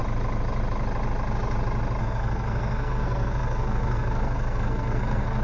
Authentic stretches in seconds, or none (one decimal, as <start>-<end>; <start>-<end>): 0.0-2.0